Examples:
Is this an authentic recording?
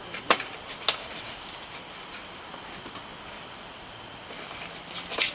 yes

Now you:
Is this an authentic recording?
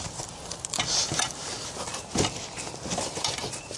yes